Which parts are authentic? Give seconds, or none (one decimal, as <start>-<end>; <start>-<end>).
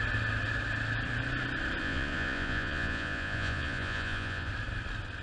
0.0-1.8; 4.5-5.2